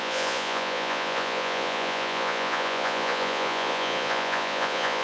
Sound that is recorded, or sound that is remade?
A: remade